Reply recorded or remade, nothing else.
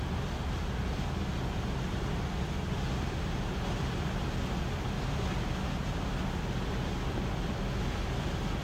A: recorded